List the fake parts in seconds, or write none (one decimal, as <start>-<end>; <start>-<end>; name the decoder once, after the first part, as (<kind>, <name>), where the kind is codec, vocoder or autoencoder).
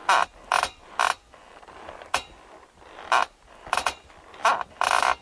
0.0-1.4 (vocoder, BigVGAN v2); 2.5-5.2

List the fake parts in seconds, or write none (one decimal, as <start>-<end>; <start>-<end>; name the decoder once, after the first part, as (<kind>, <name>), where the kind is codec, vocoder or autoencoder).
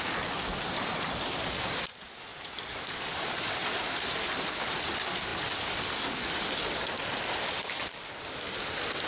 2.3-4.8 (vocoder, BigVGAN v2)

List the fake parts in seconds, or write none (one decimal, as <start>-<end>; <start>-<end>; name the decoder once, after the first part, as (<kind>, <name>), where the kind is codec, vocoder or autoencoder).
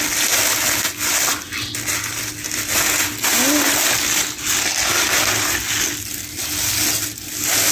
none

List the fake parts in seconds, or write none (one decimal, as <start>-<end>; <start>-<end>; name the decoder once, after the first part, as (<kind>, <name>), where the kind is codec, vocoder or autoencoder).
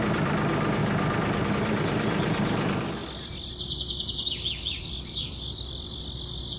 0.0-0.8 (vocoder, BigVGAN v2); 1.5-6.6